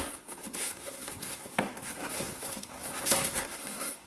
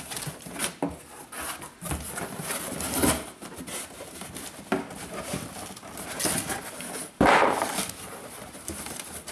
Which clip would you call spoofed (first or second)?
first